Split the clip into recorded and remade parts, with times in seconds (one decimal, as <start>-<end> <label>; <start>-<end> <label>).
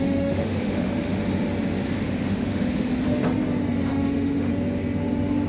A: 0.0-1.2 remade; 1.2-2.0 recorded; 2.0-2.9 remade; 2.9-3.9 recorded; 3.9-4.5 remade; 4.5-5.5 recorded